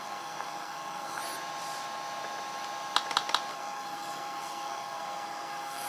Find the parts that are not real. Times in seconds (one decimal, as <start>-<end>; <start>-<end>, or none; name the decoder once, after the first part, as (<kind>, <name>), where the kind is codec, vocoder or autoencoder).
0.0-1.2 (codec, SNAC); 3.5-5.9